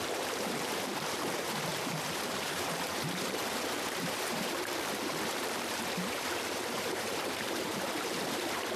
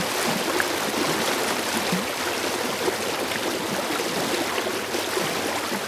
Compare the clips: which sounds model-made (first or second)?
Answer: first